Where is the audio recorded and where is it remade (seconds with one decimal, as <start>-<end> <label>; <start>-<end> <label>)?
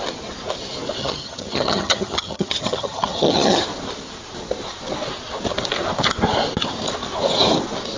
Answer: 0.0-1.0 recorded; 1.0-3.6 remade; 3.6-8.0 recorded